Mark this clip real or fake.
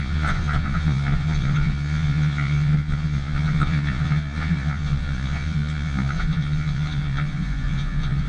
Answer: fake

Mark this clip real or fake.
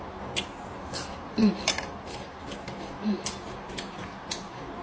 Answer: real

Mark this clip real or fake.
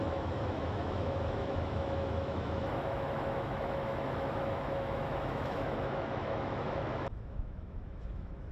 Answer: fake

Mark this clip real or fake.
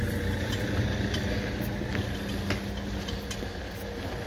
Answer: real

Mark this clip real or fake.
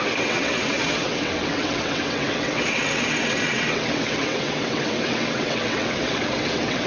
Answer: fake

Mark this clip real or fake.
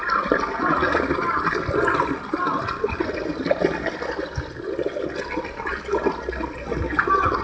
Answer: real